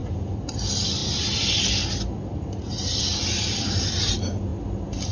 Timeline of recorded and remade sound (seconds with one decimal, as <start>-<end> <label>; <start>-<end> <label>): 0.0-5.1 recorded